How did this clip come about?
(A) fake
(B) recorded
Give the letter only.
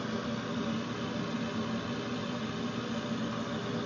B